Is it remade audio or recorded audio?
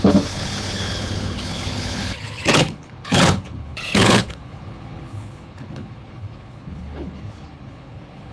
remade